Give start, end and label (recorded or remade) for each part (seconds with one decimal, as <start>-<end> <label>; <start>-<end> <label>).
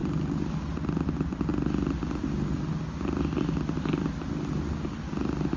0.0-5.6 recorded